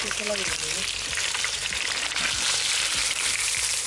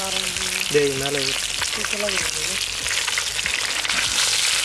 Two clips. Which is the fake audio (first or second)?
first